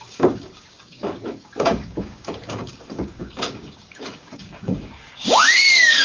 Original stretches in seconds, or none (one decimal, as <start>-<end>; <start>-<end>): none